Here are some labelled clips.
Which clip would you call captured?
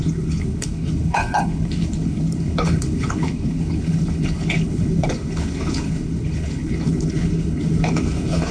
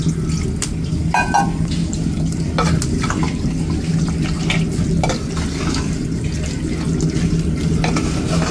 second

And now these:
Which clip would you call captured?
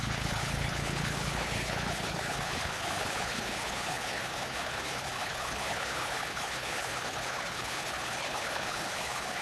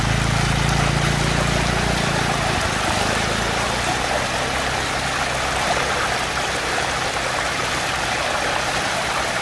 second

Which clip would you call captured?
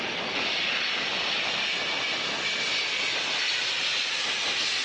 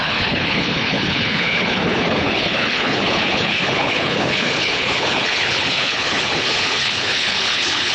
first